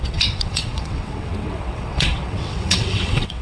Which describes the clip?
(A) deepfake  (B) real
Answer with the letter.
A